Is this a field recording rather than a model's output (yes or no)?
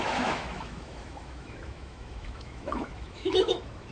no